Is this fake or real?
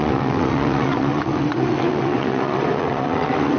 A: fake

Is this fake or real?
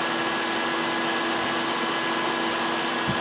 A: real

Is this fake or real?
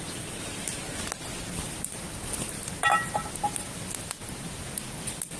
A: real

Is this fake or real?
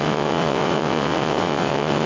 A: fake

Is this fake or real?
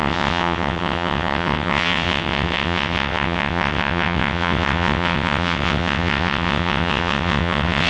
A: fake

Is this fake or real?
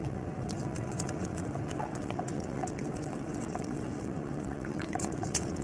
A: fake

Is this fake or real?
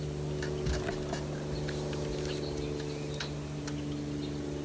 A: real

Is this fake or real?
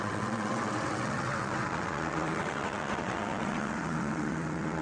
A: fake